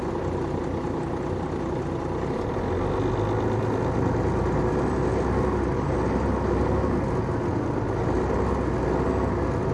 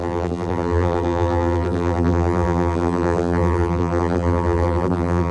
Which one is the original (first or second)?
first